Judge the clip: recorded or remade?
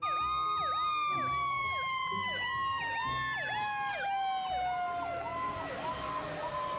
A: recorded